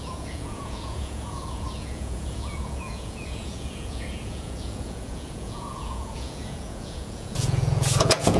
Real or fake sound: fake